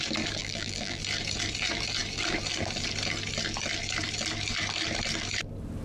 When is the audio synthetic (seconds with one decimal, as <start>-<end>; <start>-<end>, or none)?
0.4-1.0

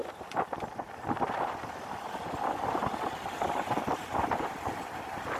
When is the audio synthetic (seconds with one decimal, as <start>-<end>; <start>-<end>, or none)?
none

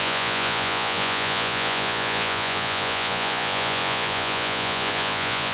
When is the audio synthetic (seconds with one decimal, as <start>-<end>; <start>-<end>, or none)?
0.0-5.5

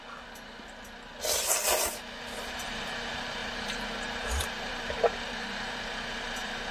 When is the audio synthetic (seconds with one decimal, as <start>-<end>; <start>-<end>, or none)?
2.4-6.7

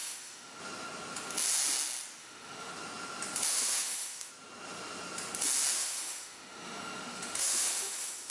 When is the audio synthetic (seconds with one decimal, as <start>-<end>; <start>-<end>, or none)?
0.0-0.6; 2.2-2.7; 3.5-4.3; 5.7-8.3